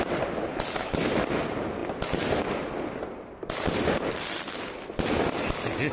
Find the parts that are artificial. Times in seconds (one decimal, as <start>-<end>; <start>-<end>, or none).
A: none